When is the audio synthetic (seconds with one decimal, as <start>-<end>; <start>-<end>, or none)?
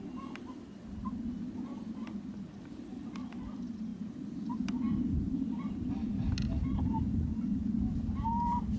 none